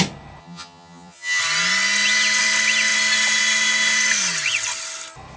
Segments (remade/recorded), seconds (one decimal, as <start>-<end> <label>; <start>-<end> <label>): 0.0-0.4 recorded; 0.4-1.4 remade; 1.4-5.4 recorded